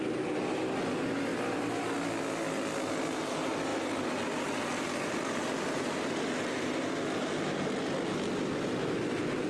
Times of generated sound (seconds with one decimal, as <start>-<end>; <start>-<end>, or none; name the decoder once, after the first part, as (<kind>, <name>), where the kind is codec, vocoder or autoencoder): none